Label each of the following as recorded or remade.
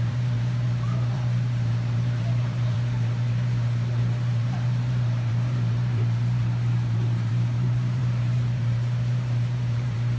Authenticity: remade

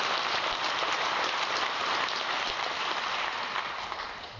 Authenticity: recorded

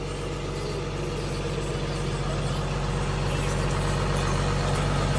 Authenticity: recorded